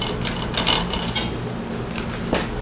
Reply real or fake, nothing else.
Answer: real